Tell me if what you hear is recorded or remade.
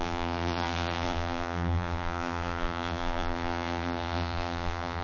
remade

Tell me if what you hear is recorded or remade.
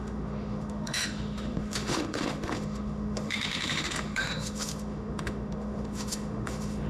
remade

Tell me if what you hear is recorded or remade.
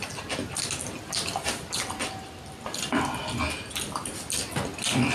recorded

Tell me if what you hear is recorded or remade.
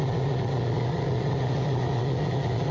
recorded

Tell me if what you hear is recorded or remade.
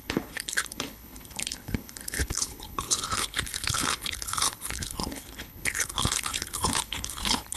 remade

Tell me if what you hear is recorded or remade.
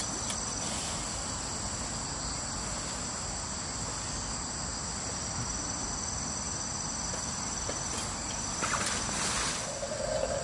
recorded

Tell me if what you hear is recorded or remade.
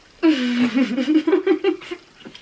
recorded